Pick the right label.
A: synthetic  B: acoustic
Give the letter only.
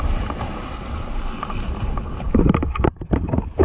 B